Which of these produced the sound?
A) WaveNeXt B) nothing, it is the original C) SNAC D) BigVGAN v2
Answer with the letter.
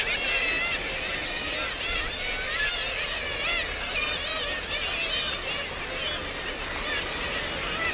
B